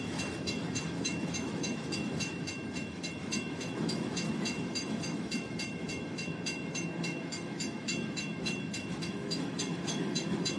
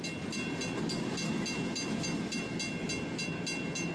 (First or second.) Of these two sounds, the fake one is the first